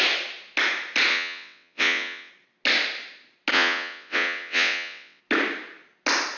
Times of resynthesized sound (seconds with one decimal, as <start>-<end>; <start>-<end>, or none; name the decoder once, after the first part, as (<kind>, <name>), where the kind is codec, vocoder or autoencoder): 1.1-2.3 (vocoder, WaveNeXt); 3.5-5.2